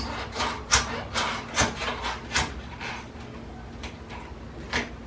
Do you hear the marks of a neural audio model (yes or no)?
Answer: no